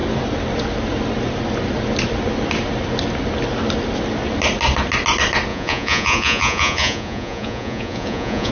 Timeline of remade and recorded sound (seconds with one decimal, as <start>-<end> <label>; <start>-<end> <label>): 0.0-5.5 recorded; 5.5-8.5 remade